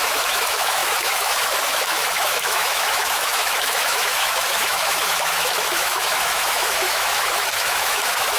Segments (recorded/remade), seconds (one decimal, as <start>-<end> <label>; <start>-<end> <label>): 0.0-8.4 remade